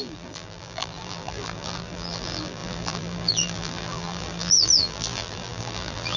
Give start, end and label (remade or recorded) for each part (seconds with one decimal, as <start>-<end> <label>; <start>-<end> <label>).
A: 0.0-6.2 remade